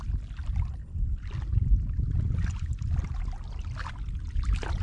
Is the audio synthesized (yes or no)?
no